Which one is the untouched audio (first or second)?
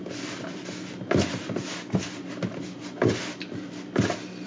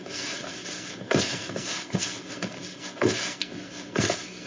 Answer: first